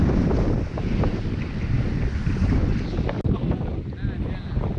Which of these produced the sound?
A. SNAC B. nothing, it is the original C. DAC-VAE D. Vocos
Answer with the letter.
B